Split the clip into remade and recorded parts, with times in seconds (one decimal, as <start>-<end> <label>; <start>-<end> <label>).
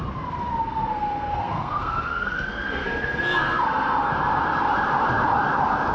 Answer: 0.0-0.6 recorded; 0.6-4.1 remade; 4.1-5.9 recorded